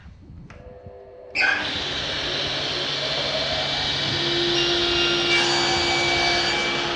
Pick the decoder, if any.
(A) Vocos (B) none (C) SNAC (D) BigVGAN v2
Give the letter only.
B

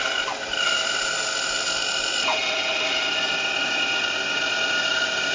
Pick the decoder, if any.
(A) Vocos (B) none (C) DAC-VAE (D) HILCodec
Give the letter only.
B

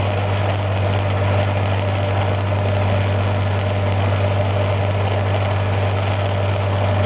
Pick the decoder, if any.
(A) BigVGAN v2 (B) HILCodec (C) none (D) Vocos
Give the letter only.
C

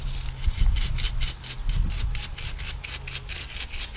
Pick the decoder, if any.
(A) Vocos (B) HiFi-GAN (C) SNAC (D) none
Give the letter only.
D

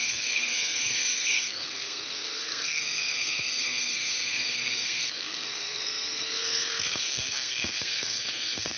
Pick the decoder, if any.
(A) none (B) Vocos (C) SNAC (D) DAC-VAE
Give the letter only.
C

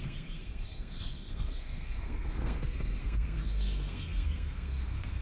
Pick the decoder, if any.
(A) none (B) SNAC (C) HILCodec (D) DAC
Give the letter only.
B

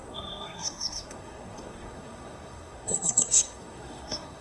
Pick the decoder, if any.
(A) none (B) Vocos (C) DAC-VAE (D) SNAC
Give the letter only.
D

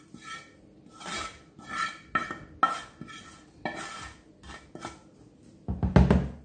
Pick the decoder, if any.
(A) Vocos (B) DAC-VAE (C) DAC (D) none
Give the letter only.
D